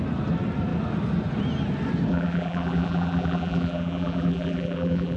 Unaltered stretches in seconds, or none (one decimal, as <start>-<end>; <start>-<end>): 0.0-2.1